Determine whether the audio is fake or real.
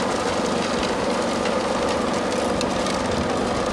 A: real